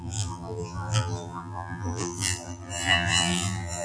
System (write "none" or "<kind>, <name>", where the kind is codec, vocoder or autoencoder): vocoder, BigVGAN v2